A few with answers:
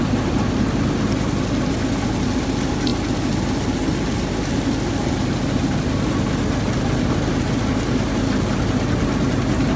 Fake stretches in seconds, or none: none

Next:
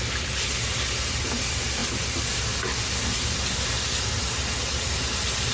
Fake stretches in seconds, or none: none

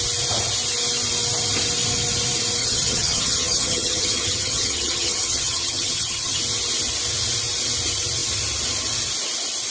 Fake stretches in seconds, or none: 2.6-6.4 (vocoder, HiFi-GAN)

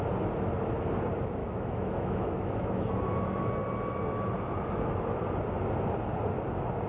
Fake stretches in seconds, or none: 1.4-3.2 (autoencoder, DAC-VAE)

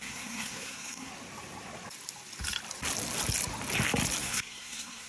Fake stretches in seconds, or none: 0.0-1.1 (codec, SNAC); 4.2-5.1

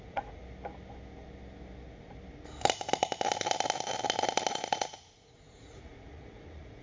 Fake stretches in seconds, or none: 0.0-0.4 (vocoder, Vocos); 4.5-6.8

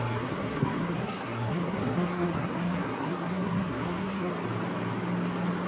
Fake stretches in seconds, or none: 0.0-4.3 (codec, SNAC)

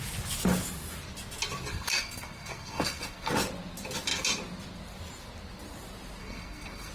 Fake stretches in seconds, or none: 1.7-3.3 (codec, SNAC); 6.2-6.9